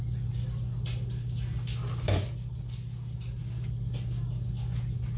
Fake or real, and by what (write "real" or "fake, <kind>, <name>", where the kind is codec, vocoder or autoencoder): real